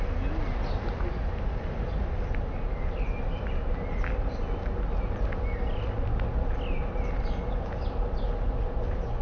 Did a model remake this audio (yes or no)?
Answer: no